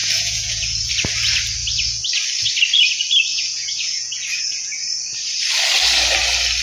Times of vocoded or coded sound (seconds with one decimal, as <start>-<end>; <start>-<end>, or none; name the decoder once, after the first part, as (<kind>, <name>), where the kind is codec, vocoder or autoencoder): 0.0-0.9 (vocoder, Vocos); 3.3-4.7